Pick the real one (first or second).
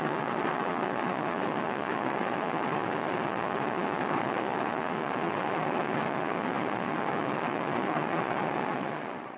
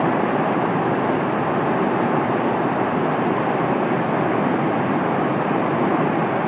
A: second